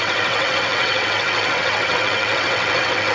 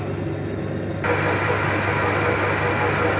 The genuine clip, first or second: second